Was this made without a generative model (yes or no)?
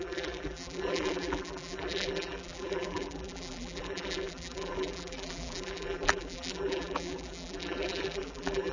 no